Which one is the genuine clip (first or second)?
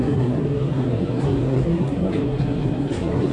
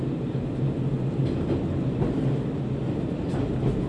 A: second